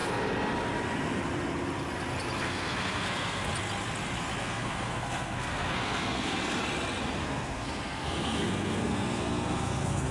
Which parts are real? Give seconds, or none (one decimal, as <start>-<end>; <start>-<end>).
0.0-2.4; 3.5-4.4; 6.4-7.2